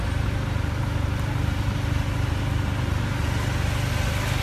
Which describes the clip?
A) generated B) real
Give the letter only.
B